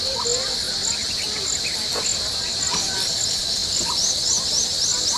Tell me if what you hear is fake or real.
real